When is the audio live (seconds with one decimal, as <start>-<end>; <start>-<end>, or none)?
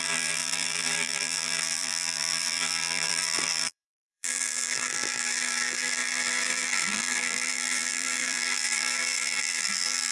none